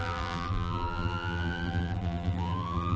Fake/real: fake